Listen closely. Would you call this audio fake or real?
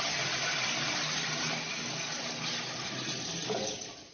real